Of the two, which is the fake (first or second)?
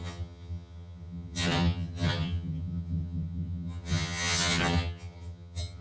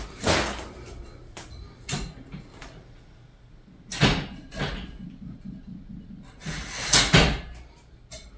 first